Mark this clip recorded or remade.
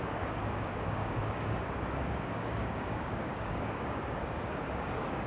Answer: remade